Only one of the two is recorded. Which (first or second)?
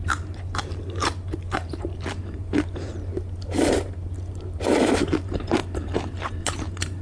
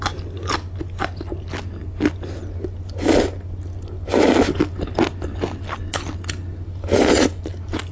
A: second